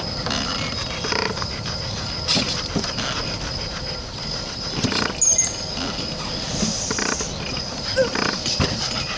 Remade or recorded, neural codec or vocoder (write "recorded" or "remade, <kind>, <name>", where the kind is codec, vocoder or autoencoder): recorded